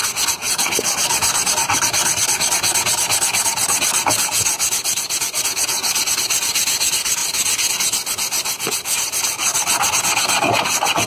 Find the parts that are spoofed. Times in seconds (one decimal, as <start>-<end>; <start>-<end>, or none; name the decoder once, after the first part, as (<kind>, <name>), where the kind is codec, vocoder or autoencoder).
none